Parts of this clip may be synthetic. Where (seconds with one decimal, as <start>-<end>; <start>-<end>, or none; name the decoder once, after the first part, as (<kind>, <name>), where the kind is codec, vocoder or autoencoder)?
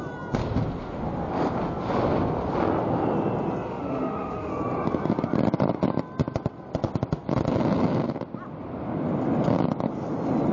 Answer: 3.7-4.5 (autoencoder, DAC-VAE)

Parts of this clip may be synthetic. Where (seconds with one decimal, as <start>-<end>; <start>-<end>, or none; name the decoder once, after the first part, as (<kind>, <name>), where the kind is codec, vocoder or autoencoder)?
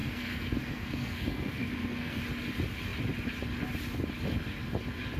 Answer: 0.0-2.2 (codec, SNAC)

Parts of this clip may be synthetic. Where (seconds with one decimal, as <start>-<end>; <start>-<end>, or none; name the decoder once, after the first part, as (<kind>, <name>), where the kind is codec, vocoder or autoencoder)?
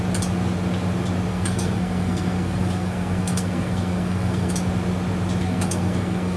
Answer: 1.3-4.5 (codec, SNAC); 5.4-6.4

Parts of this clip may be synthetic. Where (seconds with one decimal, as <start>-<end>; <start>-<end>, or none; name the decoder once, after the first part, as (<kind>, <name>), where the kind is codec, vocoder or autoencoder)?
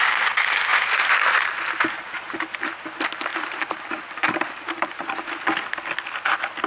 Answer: 0.7-2.7 (vocoder, BigVGAN v2); 3.3-5.2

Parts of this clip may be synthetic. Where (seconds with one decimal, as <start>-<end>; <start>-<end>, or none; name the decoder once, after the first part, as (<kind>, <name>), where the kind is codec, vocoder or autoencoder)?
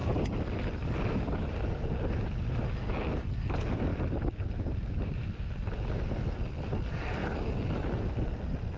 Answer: none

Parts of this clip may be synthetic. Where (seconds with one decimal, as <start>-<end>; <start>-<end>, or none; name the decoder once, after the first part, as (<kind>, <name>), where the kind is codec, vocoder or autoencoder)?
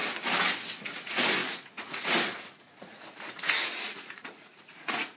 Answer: 0.8-5.2 (vocoder, Vocos)